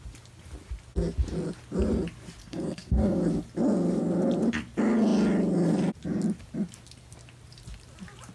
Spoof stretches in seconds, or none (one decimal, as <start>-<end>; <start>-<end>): 2.4-3.2